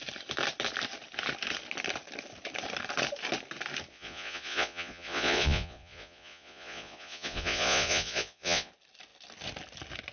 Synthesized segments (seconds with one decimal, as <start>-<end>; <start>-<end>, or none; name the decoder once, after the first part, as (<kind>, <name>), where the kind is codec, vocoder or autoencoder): 3.9-8.7 (vocoder, Vocos)